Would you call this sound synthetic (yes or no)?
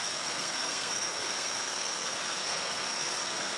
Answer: yes